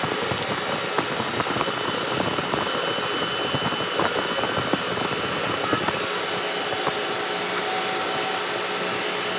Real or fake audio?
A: real